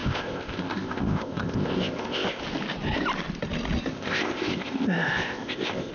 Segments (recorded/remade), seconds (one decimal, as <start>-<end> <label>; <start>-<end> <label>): 0.0-2.4 remade; 2.4-3.9 recorded; 3.9-5.9 remade